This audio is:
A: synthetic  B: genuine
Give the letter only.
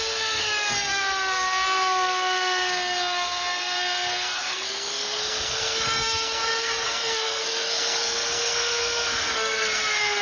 A